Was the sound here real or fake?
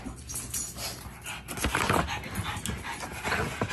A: real